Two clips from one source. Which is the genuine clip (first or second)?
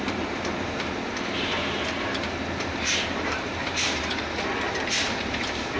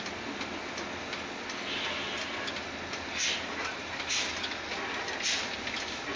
second